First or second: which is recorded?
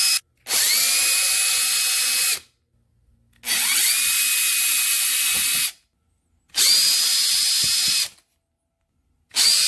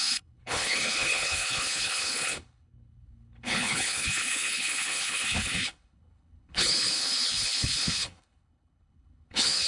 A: first